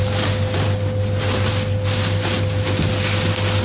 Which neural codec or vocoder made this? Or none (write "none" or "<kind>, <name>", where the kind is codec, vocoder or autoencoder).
none